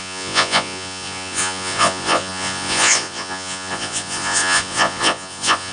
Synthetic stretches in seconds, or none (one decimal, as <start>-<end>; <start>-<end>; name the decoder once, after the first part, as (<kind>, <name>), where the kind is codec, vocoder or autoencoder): 0.0-5.7 (vocoder, Vocos)